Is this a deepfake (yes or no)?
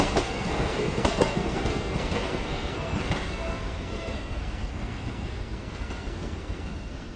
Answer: yes